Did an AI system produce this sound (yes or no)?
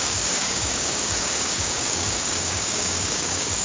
yes